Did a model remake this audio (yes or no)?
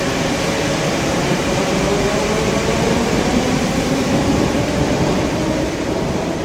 yes